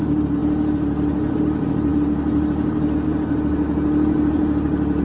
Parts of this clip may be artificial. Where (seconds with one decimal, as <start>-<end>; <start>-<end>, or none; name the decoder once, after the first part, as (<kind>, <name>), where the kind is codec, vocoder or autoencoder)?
none